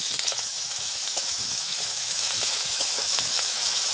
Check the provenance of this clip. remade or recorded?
remade